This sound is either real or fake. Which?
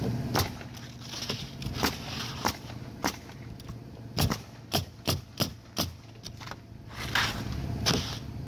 real